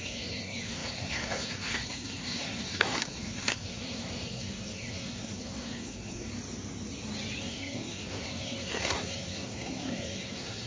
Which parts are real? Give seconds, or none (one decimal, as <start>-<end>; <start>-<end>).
6.3-7.4